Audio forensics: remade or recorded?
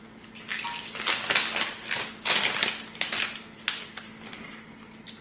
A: recorded